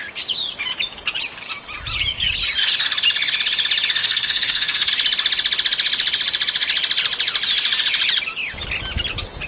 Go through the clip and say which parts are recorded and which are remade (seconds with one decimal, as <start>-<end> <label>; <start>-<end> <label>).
0.0-4.0 recorded; 4.0-4.9 remade; 4.9-9.5 recorded